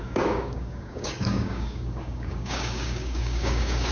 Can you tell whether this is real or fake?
fake